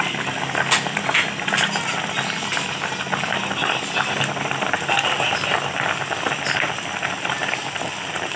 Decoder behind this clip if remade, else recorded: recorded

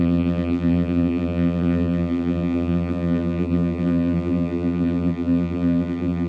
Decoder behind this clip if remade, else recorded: remade, vocoder, BigVGAN v2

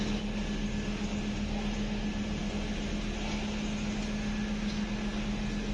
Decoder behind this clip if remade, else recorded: recorded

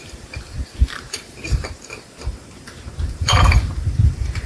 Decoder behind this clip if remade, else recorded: remade, vocoder, BigVGAN v2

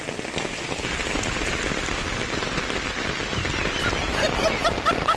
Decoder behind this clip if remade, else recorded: recorded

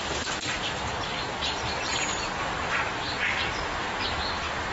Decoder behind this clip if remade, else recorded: remade, vocoder, BigVGAN v2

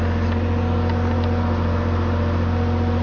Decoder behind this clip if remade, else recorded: recorded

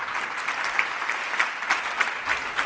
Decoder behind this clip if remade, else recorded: recorded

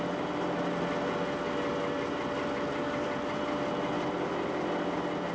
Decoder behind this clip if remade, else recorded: recorded